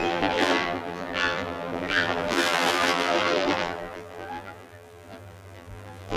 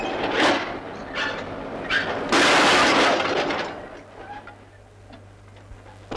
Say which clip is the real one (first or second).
second